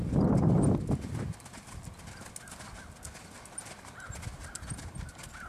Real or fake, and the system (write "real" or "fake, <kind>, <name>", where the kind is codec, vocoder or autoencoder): real